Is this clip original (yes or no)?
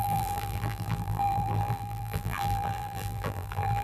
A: no